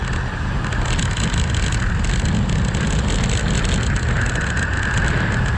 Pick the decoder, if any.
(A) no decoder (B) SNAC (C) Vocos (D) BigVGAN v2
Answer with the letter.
A